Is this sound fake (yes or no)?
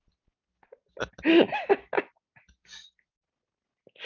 no